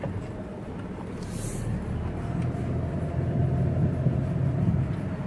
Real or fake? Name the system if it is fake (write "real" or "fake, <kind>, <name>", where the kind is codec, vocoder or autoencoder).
real